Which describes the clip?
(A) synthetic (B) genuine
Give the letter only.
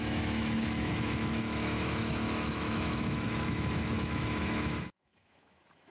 A